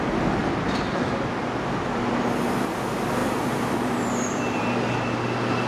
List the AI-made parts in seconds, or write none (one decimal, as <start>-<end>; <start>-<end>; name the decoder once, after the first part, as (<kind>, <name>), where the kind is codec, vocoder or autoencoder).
3.2-4.6 (vocoder, BigVGAN v2)